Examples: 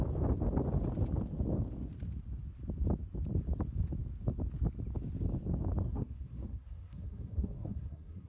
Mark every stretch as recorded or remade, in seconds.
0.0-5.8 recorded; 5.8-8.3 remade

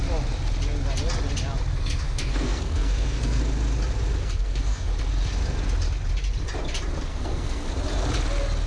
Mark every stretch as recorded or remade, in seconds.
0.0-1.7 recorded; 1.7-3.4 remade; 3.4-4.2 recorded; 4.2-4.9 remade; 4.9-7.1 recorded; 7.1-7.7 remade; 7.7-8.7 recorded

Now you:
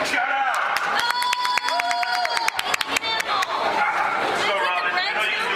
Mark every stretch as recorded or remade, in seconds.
0.0-3.2 recorded; 3.2-3.9 remade; 3.9-5.6 recorded

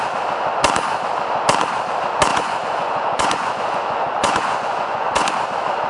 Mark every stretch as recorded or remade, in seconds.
0.0-2.3 recorded; 2.3-5.3 remade; 5.3-5.9 recorded

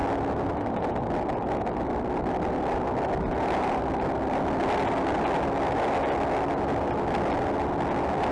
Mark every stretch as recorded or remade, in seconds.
0.0-8.3 recorded

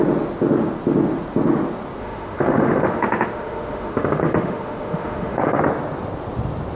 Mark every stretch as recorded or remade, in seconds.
0.0-2.0 recorded; 2.0-5.6 remade; 5.6-6.8 recorded

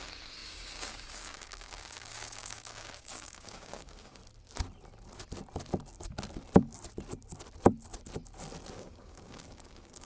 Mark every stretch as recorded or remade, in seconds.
0.0-4.2 remade; 4.2-8.7 recorded; 8.7-10.0 remade

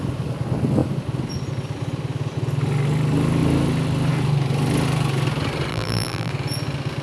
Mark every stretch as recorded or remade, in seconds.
0.0-5.7 recorded; 5.7-6.3 remade; 6.3-7.0 recorded